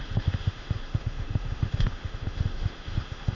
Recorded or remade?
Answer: remade